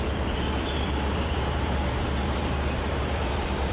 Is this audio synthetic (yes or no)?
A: yes